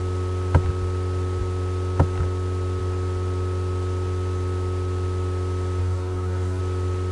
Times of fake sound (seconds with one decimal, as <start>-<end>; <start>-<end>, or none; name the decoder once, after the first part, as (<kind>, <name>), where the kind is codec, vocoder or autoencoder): 5.8-6.6 (codec, DAC)